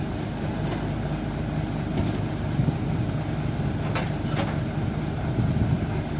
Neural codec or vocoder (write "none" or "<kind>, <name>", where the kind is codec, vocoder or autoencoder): none